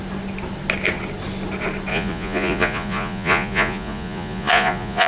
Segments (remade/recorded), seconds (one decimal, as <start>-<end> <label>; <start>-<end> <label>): 0.0-1.9 recorded; 1.9-5.1 remade